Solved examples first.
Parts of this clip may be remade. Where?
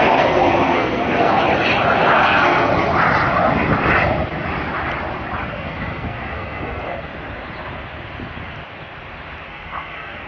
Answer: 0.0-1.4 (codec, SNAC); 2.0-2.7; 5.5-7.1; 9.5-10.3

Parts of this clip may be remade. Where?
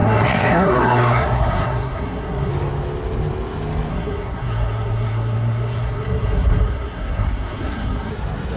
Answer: 0.0-2.5 (codec, SNAC); 3.9-8.1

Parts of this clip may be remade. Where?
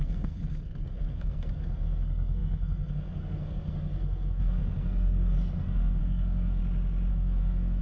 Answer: 0.0-6.6 (codec, SNAC); 7.1-7.8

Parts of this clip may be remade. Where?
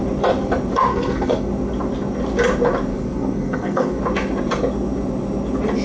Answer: 0.9-1.5 (codec, SNAC); 2.9-4.0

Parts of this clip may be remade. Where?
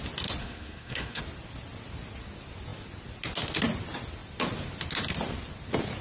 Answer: 0.4-1.2 (codec, SNAC)